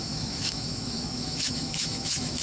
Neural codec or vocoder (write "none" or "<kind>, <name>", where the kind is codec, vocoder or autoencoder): autoencoder, DAC-VAE